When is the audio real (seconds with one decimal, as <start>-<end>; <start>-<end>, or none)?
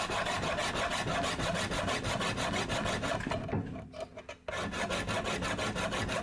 0.0-6.2